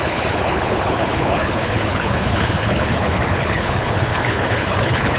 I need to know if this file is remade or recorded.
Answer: remade